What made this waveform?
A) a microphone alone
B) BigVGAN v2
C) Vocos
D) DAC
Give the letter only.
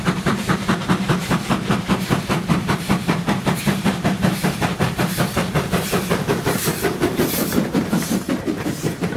B